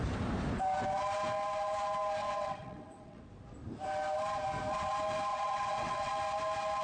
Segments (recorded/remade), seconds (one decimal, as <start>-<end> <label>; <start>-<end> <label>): 0.0-2.2 recorded; 2.2-3.2 remade; 3.2-5.3 recorded; 5.3-6.1 remade; 6.1-6.8 recorded